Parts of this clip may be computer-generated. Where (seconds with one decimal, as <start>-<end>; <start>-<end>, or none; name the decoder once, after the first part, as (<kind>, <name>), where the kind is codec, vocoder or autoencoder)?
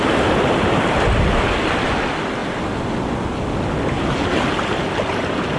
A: none